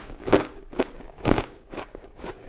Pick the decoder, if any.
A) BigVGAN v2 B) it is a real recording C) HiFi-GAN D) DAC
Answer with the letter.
D